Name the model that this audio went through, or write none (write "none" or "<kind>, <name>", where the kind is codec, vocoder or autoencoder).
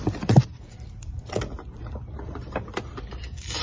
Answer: vocoder, BigVGAN v2